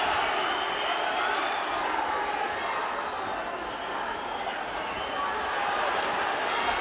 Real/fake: real